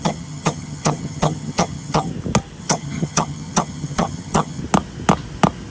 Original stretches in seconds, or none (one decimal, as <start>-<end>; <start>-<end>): 2.1-2.6; 4.6-5.7